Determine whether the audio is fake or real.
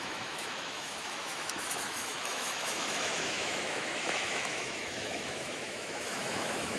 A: fake